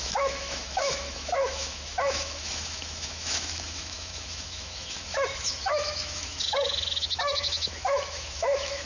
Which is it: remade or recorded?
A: remade